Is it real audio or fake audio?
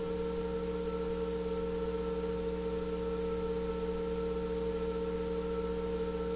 real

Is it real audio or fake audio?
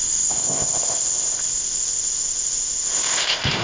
fake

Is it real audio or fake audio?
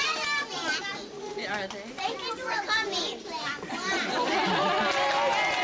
real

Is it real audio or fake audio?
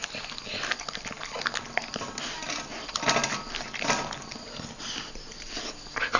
real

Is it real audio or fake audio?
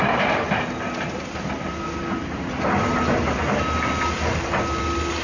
real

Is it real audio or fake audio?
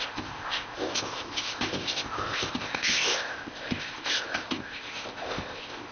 fake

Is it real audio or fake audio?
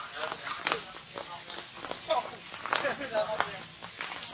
real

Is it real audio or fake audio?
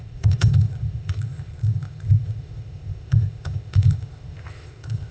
fake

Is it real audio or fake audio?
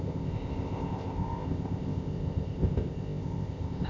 fake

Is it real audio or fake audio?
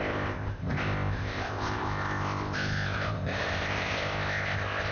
fake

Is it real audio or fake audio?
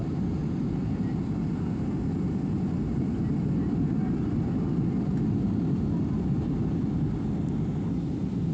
real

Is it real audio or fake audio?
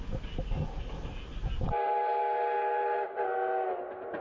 real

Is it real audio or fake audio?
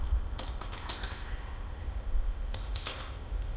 fake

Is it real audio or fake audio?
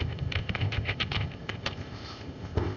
fake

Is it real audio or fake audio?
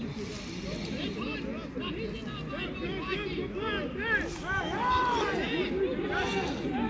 real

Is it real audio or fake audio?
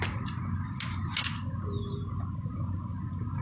real